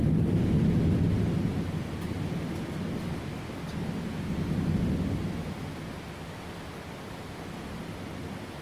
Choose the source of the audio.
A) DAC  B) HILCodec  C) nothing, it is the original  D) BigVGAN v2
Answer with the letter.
C